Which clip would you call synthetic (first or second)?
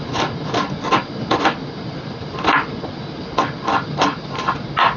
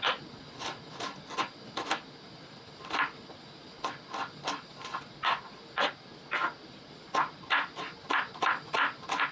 first